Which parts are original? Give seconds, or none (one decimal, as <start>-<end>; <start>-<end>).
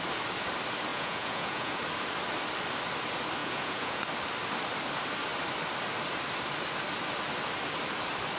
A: 0.0-0.9; 1.8-3.4; 4.0-8.4